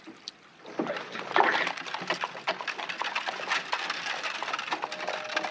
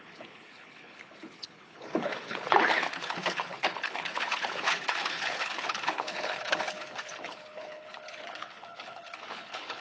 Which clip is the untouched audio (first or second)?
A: first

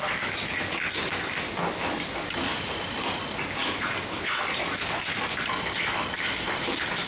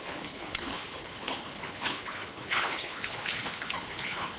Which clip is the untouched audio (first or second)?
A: first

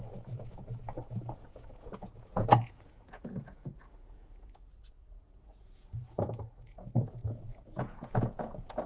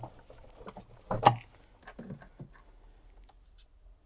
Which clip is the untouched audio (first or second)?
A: second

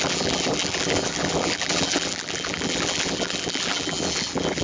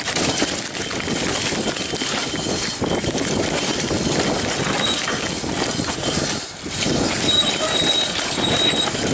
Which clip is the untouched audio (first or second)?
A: second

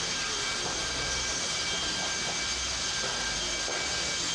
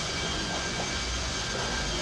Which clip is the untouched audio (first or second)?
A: first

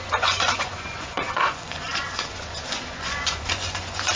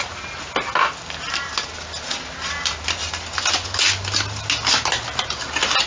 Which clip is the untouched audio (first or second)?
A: second